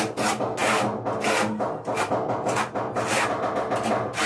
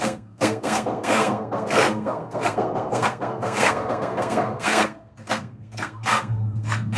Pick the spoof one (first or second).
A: second